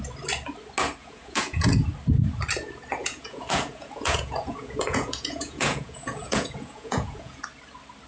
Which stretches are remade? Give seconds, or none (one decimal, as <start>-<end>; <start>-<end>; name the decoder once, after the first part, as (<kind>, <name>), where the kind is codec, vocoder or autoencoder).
1.0-1.7 (vocoder, Vocos); 3.0-7.4